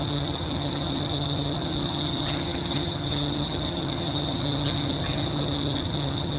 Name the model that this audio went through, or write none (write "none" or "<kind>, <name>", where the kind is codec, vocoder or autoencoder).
vocoder, HiFi-GAN